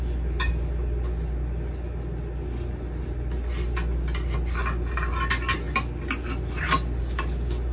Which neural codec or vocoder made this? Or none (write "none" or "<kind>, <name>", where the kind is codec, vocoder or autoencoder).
none